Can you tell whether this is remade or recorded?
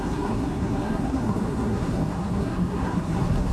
remade